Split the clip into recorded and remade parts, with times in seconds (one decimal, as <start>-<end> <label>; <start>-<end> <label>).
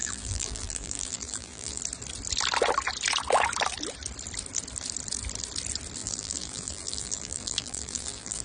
0.0-1.8 remade; 1.8-6.0 recorded; 6.0-8.4 remade